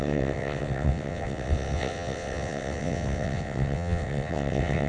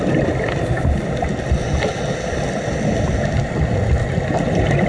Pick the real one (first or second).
second